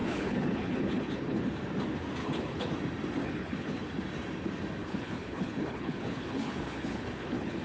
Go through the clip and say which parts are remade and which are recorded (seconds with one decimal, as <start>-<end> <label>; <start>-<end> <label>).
0.0-1.4 remade; 1.4-2.2 recorded; 2.2-2.7 remade; 2.7-3.2 recorded; 3.2-3.9 remade; 3.9-4.8 recorded; 4.8-7.6 remade